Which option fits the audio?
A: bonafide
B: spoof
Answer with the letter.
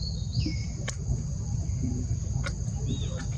A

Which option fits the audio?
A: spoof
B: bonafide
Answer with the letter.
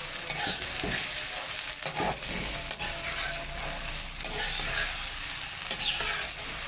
B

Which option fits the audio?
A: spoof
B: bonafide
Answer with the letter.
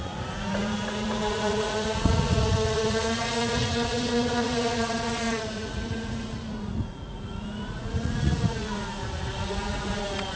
A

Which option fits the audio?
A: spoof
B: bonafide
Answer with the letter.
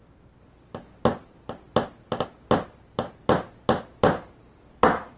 B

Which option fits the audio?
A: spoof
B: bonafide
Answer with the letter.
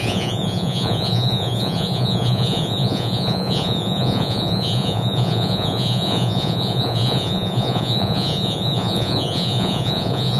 A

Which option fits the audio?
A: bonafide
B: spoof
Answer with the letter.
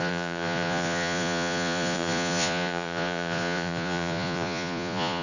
B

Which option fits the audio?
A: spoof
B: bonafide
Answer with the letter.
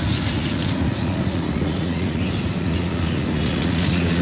A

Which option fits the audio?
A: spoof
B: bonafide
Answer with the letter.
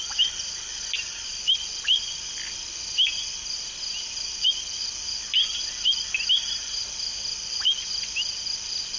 B